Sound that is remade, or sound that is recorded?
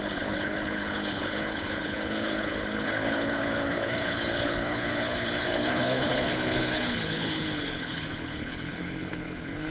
remade